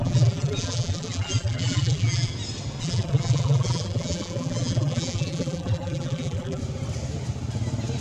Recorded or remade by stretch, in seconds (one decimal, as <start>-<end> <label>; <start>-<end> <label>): 0.0-2.3 remade; 2.3-2.8 recorded; 2.8-6.6 remade; 6.6-8.0 recorded